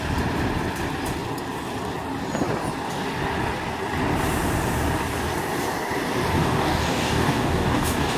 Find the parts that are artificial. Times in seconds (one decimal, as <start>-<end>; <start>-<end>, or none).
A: 6.3-8.2